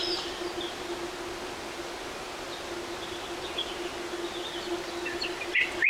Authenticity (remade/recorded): recorded